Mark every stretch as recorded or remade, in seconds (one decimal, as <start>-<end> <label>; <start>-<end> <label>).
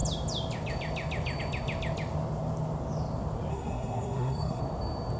0.0-3.5 recorded; 3.5-4.6 remade; 4.6-5.2 recorded